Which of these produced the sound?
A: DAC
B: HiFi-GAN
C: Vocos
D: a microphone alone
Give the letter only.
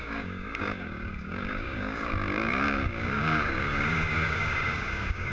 A